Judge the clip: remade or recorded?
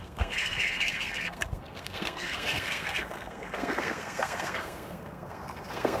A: remade